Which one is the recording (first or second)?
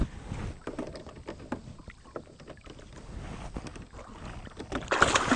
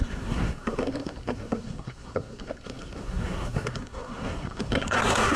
first